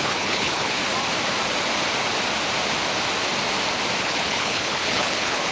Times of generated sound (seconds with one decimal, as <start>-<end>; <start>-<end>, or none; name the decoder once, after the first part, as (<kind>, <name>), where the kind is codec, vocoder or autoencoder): 0.0-0.8 (codec, HILCodec); 4.0-5.5